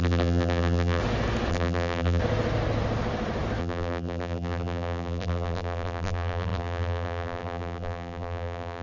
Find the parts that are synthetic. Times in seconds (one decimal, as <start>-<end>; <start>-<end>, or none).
0.0-1.0; 1.5-2.2; 3.6-8.8